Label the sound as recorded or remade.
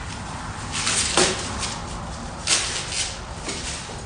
recorded